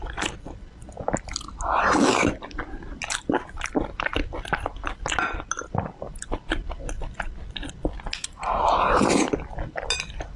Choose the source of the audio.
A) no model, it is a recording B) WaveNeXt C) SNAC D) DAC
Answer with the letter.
A